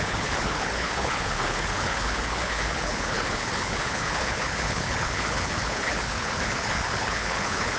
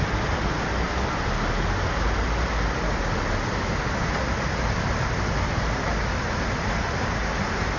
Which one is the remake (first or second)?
first